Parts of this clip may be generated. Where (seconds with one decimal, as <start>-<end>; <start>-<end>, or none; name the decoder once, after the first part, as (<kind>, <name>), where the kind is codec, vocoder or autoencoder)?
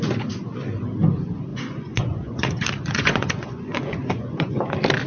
1.5-4.6 (vocoder, Vocos)